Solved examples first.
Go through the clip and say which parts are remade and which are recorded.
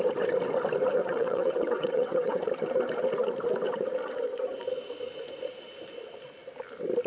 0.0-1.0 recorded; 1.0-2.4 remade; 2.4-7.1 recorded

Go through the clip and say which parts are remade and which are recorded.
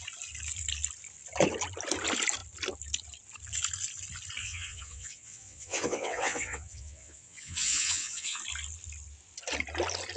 0.0-4.4 recorded; 4.4-8.4 remade; 8.4-10.2 recorded